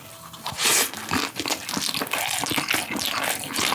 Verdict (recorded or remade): recorded